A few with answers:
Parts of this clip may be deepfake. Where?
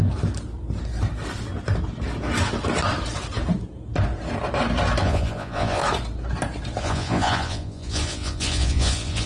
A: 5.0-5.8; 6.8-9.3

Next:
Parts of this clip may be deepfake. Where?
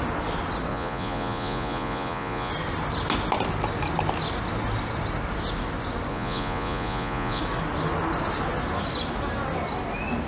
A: 0.7-2.5; 6.1-7.4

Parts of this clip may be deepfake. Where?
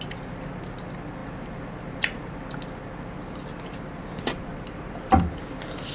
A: none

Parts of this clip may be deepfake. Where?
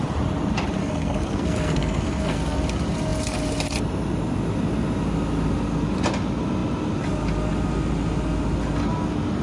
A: 0.8-2.4